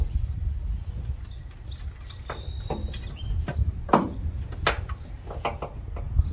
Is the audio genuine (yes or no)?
yes